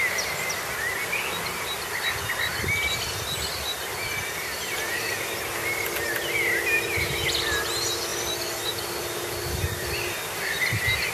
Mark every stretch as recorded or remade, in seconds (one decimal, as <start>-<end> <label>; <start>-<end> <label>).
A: 0.0-8.1 recorded; 8.1-8.7 remade; 8.7-11.1 recorded